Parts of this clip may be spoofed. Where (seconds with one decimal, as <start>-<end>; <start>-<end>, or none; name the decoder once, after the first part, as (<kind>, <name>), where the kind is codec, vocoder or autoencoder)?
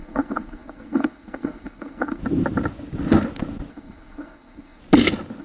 0.0-2.2 (codec, SNAC); 3.7-4.8